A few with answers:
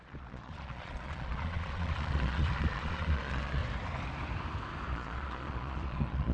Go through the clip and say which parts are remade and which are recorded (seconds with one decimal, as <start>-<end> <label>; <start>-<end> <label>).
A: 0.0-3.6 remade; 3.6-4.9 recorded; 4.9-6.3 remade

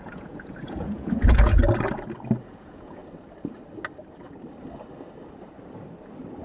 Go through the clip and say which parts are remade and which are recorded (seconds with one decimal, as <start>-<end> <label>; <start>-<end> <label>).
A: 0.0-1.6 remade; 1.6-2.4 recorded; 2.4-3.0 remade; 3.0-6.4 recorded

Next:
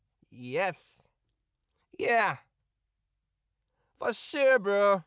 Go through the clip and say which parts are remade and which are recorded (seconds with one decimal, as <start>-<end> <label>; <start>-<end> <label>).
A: 0.0-1.6 recorded; 1.6-2.2 remade; 2.2-3.9 recorded; 3.9-4.5 remade; 4.5-5.1 recorded